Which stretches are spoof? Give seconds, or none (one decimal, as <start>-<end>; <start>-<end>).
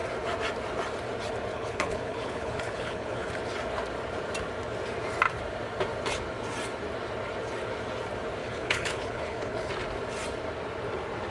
1.5-3.3; 8.4-9.7